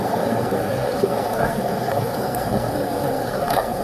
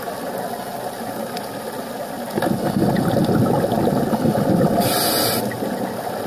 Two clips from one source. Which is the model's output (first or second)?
first